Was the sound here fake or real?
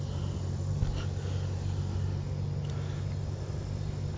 real